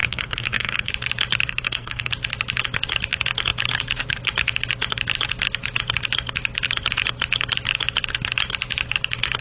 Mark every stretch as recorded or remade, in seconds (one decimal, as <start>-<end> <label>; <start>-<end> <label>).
0.0-0.9 remade; 0.9-1.5 recorded; 1.5-2.1 remade; 2.1-9.4 recorded